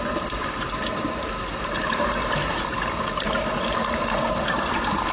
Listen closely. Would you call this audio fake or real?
real